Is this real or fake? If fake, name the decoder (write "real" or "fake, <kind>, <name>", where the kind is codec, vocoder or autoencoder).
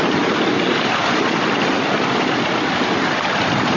real